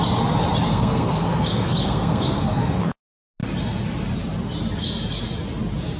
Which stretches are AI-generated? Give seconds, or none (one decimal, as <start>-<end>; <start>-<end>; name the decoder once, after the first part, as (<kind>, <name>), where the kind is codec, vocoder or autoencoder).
0.7-3.0 (codec, SNAC)